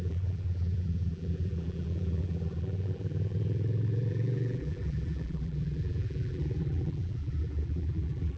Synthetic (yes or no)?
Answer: yes